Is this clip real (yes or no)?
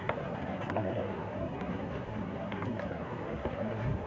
no